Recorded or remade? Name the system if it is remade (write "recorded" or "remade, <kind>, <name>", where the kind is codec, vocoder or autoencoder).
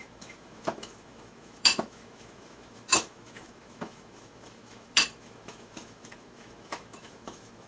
remade, autoencoder, DAC-VAE